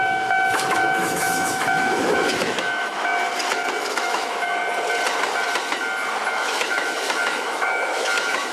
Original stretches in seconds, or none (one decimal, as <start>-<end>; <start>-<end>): 3.1-3.8; 4.6-6.3